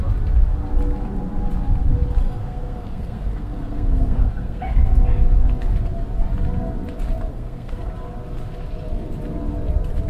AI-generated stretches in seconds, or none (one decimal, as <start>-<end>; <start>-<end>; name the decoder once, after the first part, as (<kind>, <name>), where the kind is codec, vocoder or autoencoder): 2.4-4.8 (codec, SNAC); 7.3-7.9

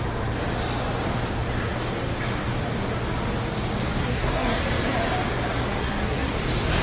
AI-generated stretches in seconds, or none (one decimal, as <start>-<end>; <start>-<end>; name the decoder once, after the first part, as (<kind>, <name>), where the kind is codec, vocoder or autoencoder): 4.0-4.6 (codec, SNAC); 5.8-6.3

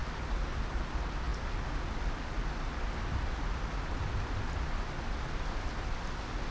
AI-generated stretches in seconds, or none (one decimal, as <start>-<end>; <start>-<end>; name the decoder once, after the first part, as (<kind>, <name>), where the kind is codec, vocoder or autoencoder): none

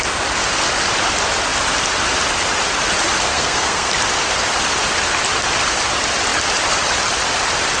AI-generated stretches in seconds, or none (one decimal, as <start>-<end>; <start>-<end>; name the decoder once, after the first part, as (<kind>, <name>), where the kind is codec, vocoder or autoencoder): 3.3-3.9 (codec, SNAC)

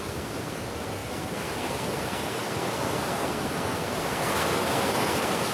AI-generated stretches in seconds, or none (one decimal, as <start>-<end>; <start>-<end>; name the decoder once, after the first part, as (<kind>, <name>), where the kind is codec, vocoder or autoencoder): 0.0-5.5 (codec, SNAC)

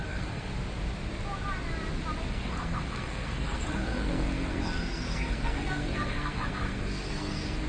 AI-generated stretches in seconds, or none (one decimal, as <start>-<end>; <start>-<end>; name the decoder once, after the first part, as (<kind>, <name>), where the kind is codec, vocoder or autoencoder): 0.0-0.5 (codec, SNAC); 2.3-7.7